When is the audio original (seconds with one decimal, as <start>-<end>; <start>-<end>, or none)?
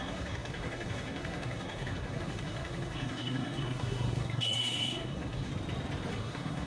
5.5-6.1